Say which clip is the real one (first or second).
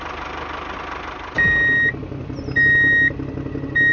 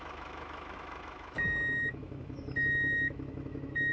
first